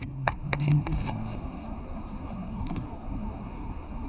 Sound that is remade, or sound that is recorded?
remade